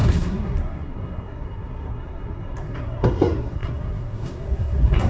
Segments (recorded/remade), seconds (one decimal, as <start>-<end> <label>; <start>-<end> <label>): 0.0-5.1 remade